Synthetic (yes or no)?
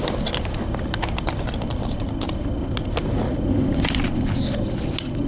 no